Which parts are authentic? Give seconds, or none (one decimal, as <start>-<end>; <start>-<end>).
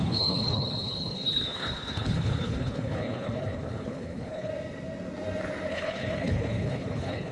4.5-5.7